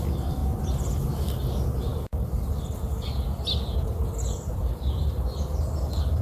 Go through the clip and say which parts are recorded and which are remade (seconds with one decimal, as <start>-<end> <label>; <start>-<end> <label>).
0.0-0.4 remade; 0.4-1.2 recorded; 1.2-6.2 remade